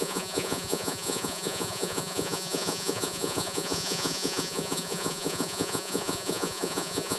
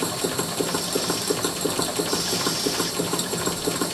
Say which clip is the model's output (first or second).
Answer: first